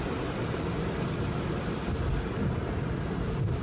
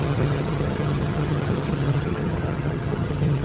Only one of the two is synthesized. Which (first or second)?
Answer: second